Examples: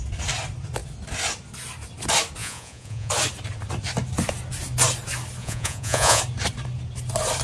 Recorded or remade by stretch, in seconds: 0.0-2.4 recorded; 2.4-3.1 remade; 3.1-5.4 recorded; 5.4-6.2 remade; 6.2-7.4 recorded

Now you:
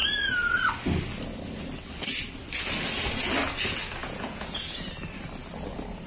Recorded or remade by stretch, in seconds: 0.0-4.0 recorded; 4.0-4.9 remade; 4.9-6.1 recorded